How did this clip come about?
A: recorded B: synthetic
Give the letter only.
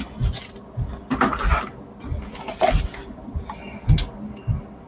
A